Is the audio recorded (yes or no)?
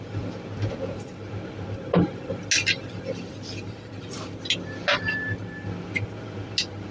yes